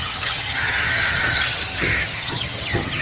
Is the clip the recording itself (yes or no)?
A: no